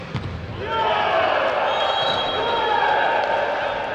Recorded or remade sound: recorded